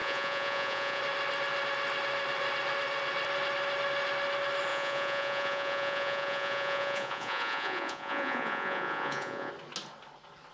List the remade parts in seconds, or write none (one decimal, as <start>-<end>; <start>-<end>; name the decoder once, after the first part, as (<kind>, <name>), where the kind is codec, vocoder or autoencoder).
0.0-1.0 (vocoder, Vocos); 4.7-9.5

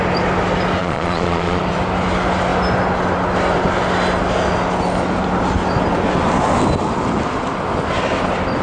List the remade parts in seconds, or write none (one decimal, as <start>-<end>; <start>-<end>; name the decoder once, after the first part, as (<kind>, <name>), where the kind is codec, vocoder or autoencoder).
0.8-1.6 (vocoder, Vocos)

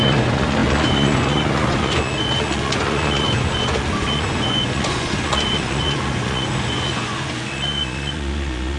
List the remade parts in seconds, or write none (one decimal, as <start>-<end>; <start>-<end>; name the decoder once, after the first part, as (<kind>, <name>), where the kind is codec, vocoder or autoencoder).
0.0-8.8 (vocoder, Vocos)

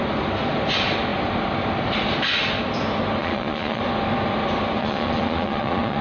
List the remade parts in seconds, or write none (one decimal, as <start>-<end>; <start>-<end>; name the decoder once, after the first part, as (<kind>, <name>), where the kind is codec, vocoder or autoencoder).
3.2-3.8 (vocoder, Vocos); 4.8-6.0

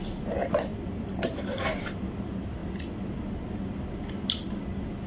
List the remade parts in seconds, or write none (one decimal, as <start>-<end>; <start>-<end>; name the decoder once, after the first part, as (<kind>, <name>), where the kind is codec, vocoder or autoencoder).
none

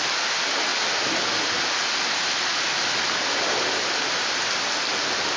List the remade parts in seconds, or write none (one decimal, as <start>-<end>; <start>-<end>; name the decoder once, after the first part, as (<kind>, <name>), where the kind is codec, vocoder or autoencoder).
none

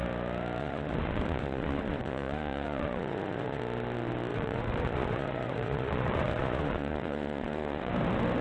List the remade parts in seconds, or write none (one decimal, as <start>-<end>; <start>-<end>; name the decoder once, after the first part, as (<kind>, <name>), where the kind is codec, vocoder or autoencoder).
0.6-3.6 (vocoder, Vocos); 4.3-7.9